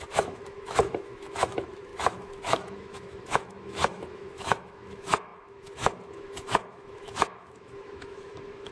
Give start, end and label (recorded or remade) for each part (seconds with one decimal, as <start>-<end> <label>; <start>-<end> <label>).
0.0-8.7 remade